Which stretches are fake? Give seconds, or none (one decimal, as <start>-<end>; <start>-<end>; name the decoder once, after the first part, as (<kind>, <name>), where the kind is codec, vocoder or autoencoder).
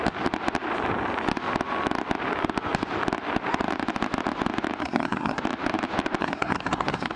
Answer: 4.8-5.4 (codec, SNAC); 6.2-7.2